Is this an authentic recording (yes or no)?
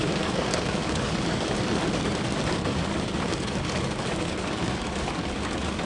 no